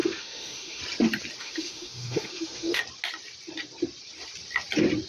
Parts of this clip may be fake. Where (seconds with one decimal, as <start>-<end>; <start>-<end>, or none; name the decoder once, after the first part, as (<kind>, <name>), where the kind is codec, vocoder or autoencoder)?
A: 0.0-0.8 (autoencoder, DAC-VAE); 1.4-2.8